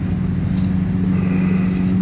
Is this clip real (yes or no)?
yes